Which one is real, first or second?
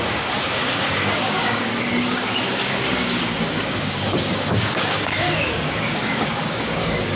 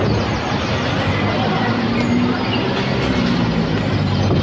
second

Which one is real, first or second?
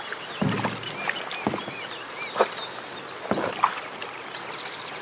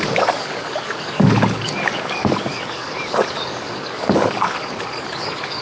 first